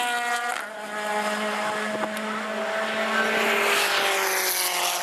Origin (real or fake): real